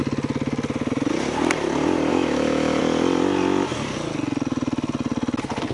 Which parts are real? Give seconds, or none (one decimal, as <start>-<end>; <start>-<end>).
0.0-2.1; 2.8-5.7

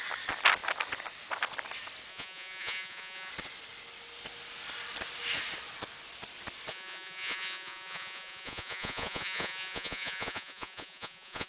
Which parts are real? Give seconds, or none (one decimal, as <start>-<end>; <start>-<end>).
0.0-2.1; 3.3-6.7

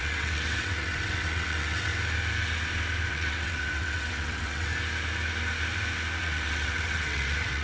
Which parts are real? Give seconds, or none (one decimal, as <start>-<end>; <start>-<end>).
1.9-3.1; 4.7-6.2

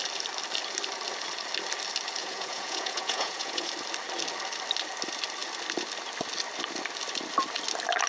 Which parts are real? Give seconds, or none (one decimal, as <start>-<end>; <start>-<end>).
0.0-2.2; 3.7-8.1

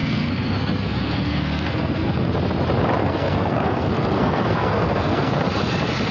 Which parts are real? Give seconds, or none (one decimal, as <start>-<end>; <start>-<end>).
2.3-3.0; 5.4-6.1

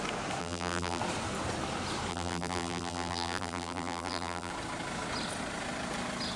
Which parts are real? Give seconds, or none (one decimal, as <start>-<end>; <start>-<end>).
0.0-0.4; 1.0-2.1; 4.5-6.4

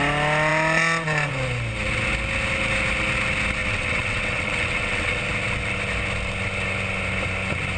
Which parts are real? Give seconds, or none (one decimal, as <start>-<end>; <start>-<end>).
0.0-3.6; 5.2-7.8